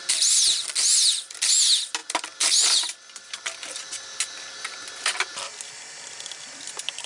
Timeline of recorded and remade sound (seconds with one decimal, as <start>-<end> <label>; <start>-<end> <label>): 0.0-7.1 recorded